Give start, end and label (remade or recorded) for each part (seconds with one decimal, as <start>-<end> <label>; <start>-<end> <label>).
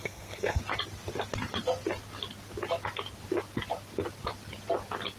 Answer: 0.0-0.6 remade; 0.6-5.2 recorded